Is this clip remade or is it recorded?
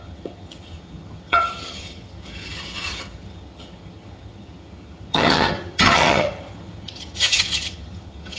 remade